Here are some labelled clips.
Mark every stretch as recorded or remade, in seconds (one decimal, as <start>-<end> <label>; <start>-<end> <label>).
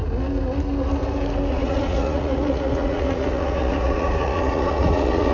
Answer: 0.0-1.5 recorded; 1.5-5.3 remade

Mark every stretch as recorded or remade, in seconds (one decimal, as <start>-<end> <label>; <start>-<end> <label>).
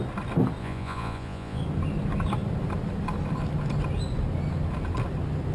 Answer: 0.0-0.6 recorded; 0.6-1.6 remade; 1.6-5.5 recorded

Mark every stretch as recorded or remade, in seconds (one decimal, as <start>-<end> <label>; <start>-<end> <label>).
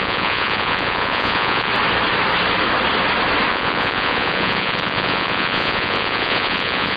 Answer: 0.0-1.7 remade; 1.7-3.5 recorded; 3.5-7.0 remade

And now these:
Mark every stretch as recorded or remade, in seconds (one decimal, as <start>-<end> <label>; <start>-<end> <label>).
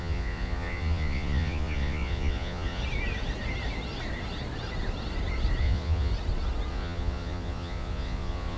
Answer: 0.0-2.8 remade; 2.8-5.6 recorded; 5.6-6.1 remade; 6.1-6.7 recorded; 6.7-8.6 remade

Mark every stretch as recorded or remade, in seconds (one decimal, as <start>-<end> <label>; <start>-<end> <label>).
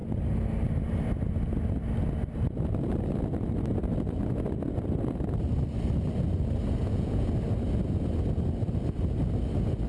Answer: 0.0-6.8 recorded; 6.8-7.3 remade; 7.3-9.9 recorded